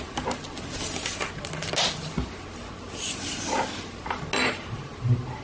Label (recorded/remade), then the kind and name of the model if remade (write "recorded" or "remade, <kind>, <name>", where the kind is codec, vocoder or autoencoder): recorded